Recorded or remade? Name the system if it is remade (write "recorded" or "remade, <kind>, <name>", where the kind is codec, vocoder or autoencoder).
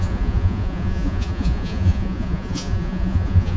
remade, vocoder, Vocos